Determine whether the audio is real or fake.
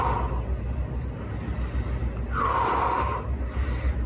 real